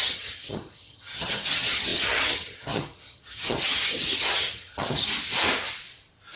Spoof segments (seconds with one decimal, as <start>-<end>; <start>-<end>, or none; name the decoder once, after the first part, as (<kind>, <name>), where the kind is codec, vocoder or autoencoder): 0.0-5.1 (vocoder, HiFi-GAN)